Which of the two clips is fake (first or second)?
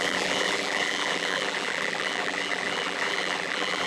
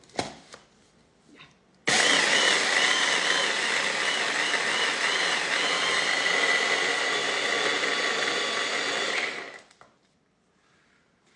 first